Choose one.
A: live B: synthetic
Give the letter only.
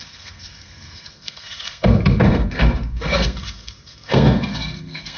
B